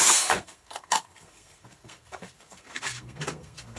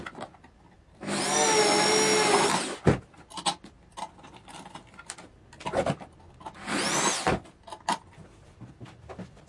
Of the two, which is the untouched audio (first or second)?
second